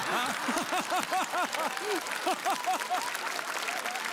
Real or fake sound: real